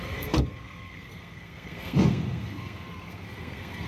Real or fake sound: fake